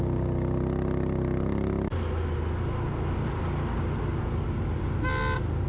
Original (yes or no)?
yes